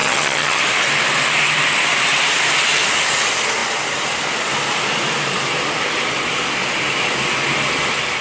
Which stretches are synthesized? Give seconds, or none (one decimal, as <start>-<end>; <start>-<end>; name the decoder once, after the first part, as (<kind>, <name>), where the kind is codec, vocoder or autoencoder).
0.0-0.6 (vocoder, HiFi-GAN)